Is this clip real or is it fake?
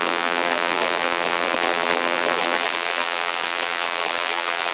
fake